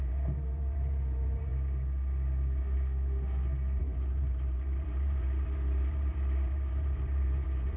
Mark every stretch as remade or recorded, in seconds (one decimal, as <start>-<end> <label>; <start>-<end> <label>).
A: 0.0-1.5 remade; 1.5-3.8 recorded; 3.8-7.8 remade

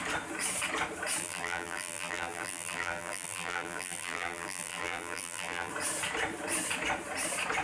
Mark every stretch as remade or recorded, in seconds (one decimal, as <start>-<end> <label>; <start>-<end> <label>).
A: 0.0-1.2 recorded; 1.2-5.7 remade; 5.7-7.6 recorded

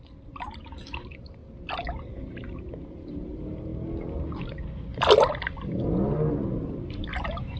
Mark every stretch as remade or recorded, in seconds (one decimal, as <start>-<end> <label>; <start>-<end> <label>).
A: 0.0-1.4 remade; 1.4-2.1 recorded; 2.1-3.7 remade; 3.7-6.3 recorded; 6.3-7.6 remade

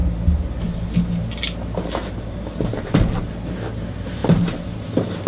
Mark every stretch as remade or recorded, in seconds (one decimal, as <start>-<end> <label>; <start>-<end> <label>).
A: 0.0-5.3 recorded